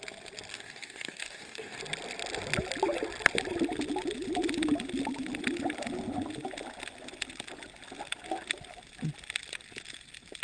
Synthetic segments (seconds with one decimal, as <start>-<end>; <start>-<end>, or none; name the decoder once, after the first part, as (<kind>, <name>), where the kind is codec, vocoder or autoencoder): 0.5-1.8 (codec, DAC)